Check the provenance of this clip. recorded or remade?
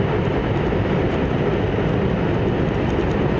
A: recorded